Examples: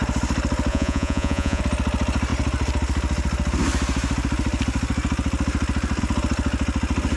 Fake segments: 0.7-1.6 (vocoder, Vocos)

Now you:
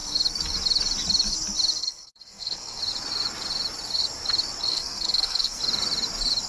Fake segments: 1.8-2.8 (codec, SNAC); 4.7-5.6

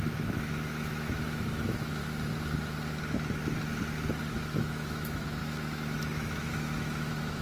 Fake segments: 0.0-2.0 (autoencoder, DAC-VAE); 4.4-7.4

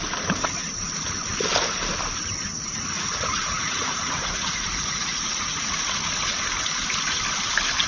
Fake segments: 2.5-5.7 (vocoder, Vocos)

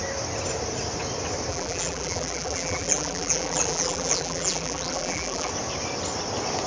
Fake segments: 1.5-5.5 (vocoder, BigVGAN v2)